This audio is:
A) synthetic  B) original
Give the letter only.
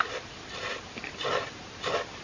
A